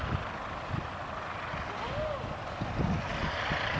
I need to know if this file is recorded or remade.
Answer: recorded